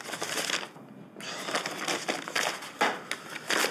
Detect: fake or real real